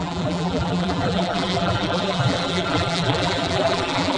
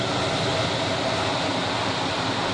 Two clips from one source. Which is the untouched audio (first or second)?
second